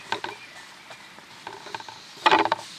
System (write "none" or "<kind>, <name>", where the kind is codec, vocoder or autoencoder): none